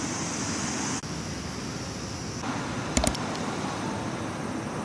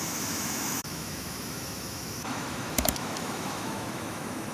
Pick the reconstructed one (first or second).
second